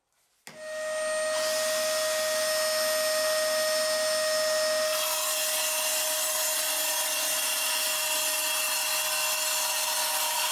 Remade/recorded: recorded